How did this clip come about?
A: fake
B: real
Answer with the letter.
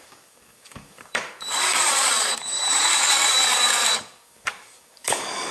A